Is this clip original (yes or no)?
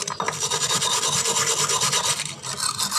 yes